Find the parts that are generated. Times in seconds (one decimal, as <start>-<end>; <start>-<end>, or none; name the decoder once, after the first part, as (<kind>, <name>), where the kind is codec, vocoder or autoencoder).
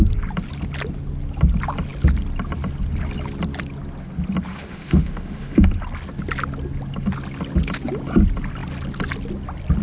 4.5-5.7 (autoencoder, DAC-VAE)